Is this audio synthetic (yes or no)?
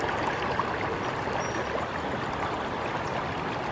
no